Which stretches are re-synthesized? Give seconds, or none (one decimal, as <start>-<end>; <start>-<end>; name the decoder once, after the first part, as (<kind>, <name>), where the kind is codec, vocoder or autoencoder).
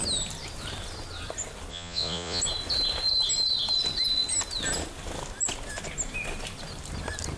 1.7-2.4 (vocoder, Vocos)